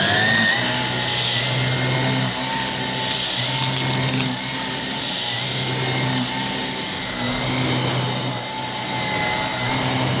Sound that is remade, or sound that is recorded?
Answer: recorded